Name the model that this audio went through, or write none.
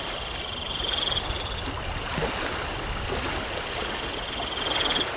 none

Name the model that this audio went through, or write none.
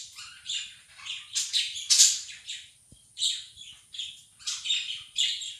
vocoder, BigVGAN v2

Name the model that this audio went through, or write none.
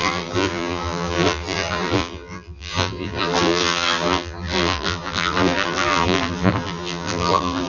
vocoder, BigVGAN v2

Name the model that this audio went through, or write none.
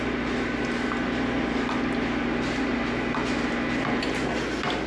none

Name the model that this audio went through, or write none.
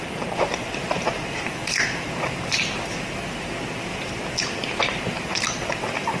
vocoder, BigVGAN v2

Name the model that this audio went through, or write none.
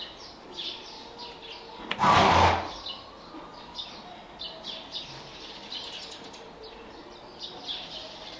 none